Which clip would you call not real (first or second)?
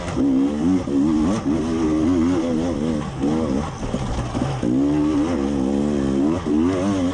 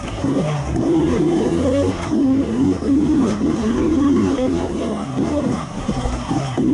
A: second